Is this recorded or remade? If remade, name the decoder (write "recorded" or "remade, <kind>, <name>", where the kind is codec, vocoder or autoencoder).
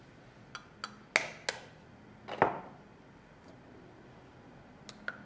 recorded